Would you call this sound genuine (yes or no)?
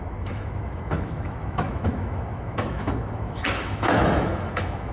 no